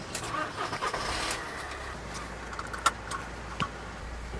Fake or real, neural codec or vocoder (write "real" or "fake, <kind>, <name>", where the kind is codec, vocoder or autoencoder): real